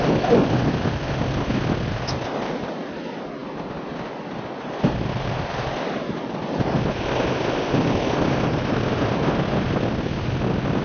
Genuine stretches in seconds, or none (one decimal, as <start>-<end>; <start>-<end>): 0.0-10.8